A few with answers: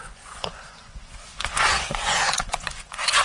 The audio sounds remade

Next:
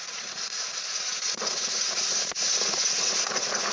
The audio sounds remade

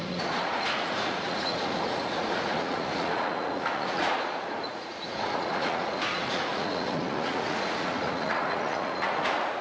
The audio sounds remade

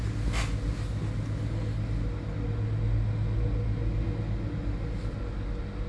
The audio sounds recorded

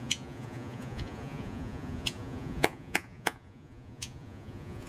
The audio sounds remade